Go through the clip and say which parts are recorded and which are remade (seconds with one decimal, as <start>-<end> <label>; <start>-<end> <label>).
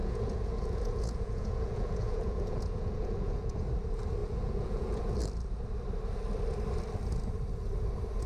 0.0-3.7 remade; 3.7-4.2 recorded; 4.2-5.0 remade; 5.0-8.3 recorded